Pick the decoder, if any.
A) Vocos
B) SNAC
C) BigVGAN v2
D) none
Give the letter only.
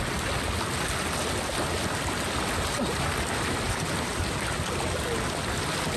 D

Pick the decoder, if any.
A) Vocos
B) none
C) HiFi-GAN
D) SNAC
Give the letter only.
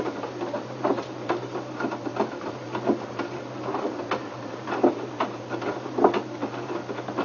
B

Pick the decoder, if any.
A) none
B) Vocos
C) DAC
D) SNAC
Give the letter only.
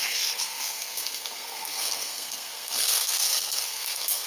D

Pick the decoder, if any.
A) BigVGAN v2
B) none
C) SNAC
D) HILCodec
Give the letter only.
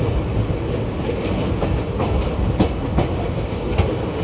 B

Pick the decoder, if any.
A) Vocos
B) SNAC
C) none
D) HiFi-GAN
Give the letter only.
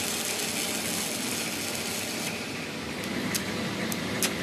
C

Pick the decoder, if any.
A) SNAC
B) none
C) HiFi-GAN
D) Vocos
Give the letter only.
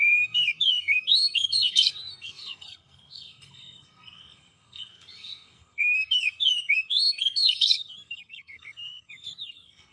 A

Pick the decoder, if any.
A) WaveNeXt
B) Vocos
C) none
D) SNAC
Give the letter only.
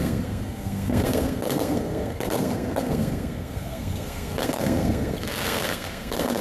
D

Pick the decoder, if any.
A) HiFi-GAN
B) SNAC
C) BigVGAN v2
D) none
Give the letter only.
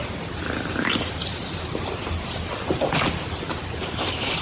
D